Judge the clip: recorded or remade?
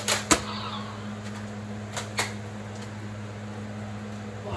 recorded